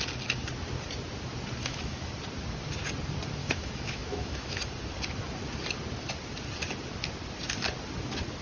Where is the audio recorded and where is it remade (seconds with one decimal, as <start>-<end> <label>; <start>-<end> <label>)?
0.0-1.6 recorded; 1.6-2.1 remade; 2.1-3.4 recorded; 3.4-4.6 remade; 4.6-8.4 recorded